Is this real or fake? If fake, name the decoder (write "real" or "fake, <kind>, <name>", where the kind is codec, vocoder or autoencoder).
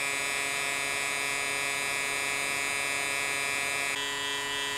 real